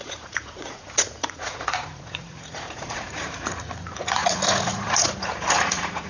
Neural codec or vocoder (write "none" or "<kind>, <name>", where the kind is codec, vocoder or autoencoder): vocoder, Vocos